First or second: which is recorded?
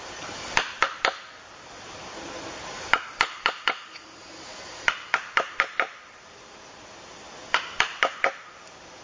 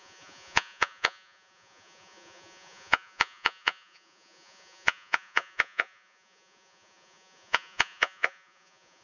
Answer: first